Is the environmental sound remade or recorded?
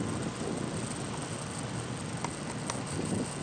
recorded